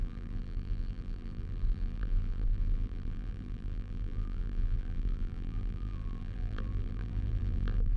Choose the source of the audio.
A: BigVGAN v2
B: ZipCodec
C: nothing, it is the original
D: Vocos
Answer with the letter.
A